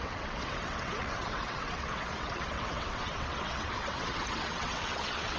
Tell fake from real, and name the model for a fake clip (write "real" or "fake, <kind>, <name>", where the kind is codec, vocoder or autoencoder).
fake, vocoder, WaveNeXt